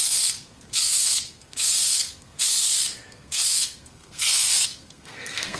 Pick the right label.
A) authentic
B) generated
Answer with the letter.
B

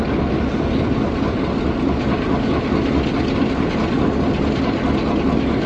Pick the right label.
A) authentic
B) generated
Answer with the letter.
A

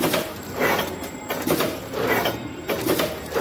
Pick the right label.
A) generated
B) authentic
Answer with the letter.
A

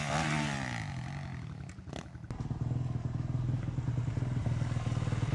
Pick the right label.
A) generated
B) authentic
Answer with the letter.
B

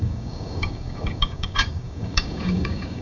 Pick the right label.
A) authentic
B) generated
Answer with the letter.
B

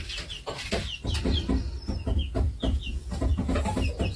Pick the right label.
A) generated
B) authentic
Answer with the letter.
B